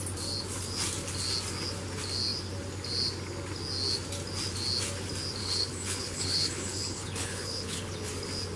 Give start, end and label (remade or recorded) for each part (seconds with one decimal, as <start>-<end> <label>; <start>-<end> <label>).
0.0-5.4 recorded; 5.4-8.1 remade; 8.1-8.6 recorded